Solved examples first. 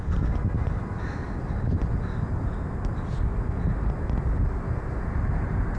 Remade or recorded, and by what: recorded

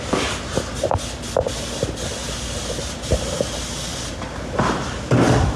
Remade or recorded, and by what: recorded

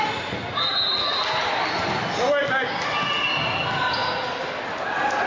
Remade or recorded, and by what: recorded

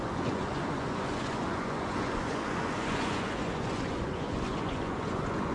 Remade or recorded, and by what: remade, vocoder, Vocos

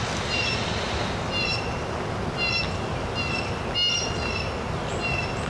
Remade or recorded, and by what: recorded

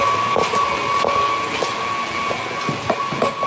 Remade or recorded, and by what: recorded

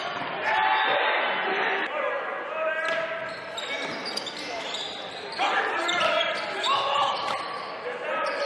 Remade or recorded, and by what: recorded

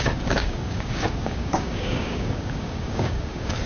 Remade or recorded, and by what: remade, codec, DAC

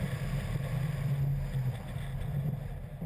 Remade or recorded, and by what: recorded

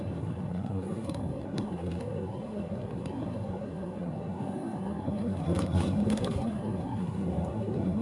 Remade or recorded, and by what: remade, codec, SNAC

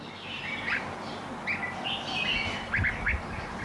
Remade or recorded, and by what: recorded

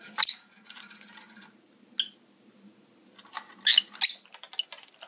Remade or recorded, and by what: recorded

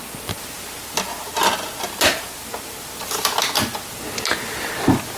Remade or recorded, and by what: recorded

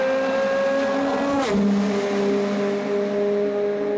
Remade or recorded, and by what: recorded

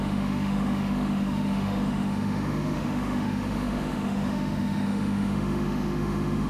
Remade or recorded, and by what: remade, autoencoder, DAC-VAE